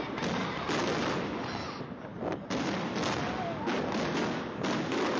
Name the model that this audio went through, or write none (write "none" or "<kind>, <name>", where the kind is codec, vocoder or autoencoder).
none